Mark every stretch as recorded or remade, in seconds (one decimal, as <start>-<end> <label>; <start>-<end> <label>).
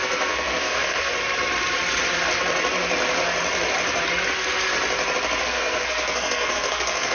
0.0-1.1 remade; 1.1-5.4 recorded; 5.4-7.1 remade